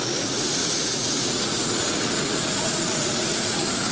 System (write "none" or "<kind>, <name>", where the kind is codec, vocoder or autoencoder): vocoder, Vocos